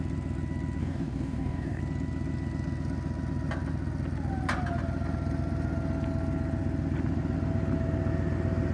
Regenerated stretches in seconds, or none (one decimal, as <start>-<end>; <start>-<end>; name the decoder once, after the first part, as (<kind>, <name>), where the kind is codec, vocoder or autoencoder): 0.8-1.8 (codec, DAC)